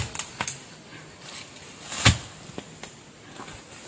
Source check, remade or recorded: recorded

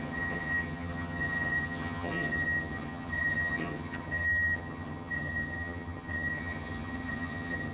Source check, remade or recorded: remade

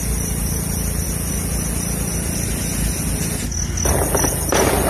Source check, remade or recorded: recorded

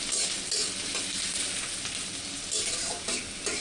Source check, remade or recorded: recorded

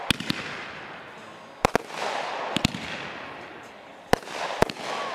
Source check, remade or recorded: recorded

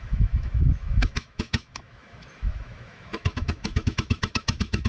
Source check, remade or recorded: remade